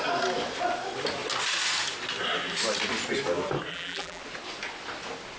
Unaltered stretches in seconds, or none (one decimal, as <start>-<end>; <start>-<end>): 0.0-3.7; 4.2-5.4